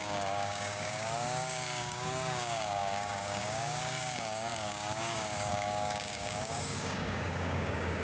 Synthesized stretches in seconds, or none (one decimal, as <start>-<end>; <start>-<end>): 0.0-8.0